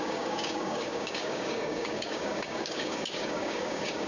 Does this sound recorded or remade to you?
remade